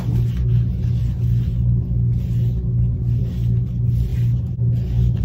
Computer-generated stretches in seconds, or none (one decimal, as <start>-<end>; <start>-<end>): none